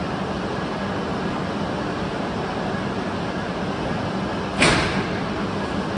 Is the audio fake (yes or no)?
no